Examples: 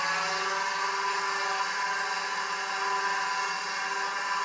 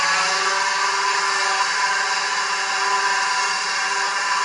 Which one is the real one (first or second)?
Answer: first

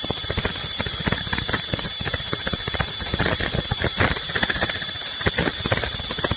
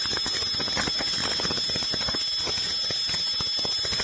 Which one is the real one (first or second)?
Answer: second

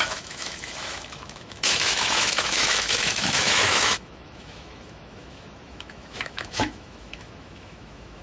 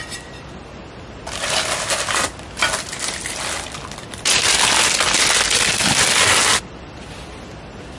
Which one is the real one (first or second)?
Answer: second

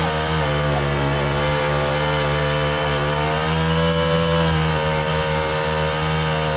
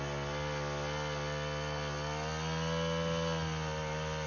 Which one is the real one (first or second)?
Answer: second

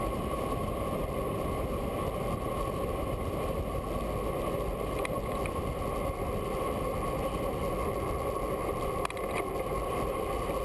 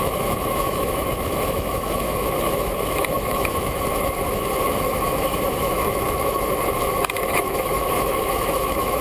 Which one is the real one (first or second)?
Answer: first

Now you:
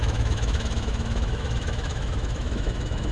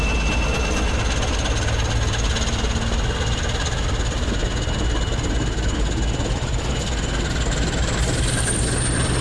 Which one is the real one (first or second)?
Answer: second